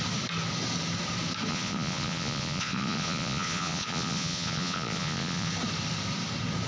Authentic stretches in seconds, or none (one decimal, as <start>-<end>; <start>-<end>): 0.0-1.5; 5.5-6.7